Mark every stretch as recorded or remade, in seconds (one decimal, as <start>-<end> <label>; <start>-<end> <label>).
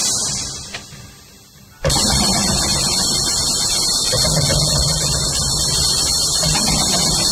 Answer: 0.0-7.3 recorded